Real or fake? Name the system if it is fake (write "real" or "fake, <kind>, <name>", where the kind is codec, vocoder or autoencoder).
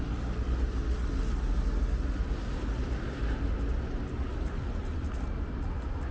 real